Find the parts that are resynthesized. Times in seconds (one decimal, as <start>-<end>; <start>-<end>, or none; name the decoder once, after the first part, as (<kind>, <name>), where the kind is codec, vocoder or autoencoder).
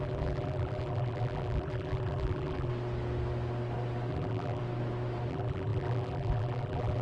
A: 0.0-2.7 (vocoder, BigVGAN v2); 4.1-4.6; 5.3-7.0